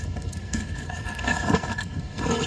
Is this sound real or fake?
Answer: fake